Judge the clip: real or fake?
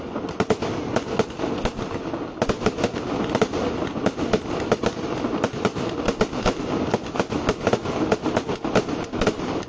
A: real